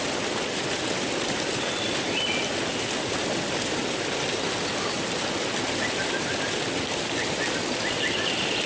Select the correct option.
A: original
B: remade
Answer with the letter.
A